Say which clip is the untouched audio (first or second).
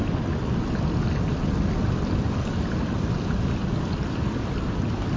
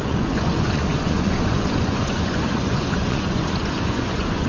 first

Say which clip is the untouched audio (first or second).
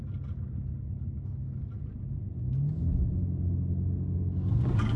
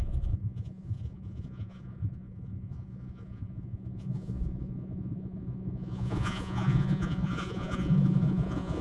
first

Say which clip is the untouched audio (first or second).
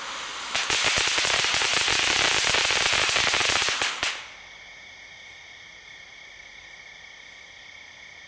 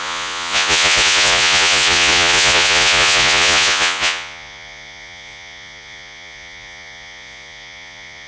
first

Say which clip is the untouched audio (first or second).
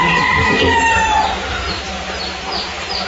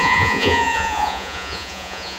first